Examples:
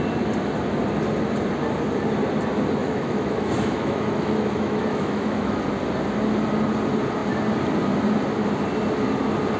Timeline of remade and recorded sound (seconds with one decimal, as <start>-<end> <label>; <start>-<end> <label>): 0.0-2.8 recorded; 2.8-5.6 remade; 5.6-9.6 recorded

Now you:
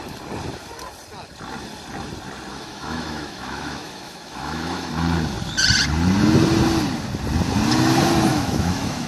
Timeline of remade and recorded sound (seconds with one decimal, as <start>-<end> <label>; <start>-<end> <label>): 0.0-2.5 recorded; 2.5-4.9 remade; 4.9-8.3 recorded; 8.3-9.1 remade

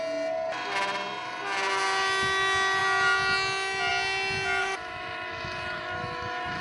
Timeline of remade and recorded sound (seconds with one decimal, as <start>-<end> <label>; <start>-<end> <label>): 0.0-4.6 recorded; 4.6-6.6 remade

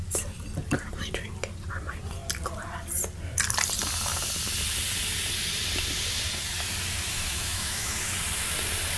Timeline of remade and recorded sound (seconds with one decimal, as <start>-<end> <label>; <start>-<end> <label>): 0.0-7.1 recorded; 7.1-8.2 remade; 8.2-9.0 recorded

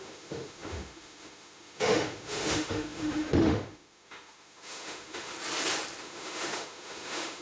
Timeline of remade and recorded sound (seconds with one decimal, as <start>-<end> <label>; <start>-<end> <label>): 0.0-5.3 remade; 5.3-6.0 recorded; 6.0-7.4 remade

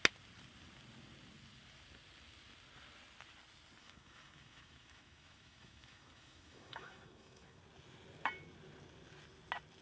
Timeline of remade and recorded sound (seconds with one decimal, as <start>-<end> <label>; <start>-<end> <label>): 0.0-3.8 recorded; 3.8-7.6 remade; 7.6-9.8 recorded